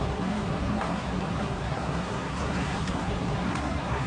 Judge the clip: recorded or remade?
remade